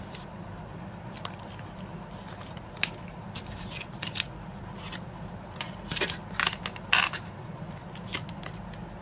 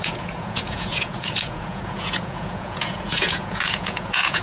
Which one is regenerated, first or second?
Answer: second